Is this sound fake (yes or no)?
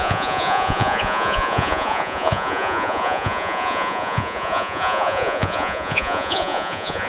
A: yes